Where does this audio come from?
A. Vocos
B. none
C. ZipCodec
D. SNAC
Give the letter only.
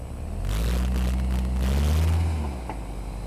B